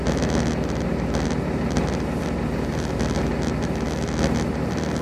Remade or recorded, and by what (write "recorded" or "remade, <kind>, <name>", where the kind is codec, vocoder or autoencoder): recorded